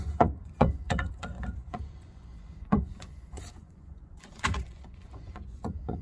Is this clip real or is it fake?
fake